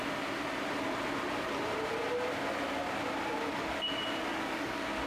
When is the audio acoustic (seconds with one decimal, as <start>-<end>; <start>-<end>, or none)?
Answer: 0.0-4.3